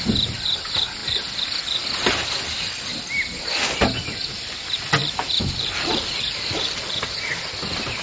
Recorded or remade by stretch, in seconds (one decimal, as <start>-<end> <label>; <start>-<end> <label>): 0.0-5.0 recorded; 5.0-7.0 remade; 7.0-8.0 recorded